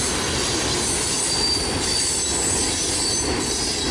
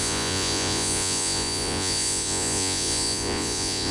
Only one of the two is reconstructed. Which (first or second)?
second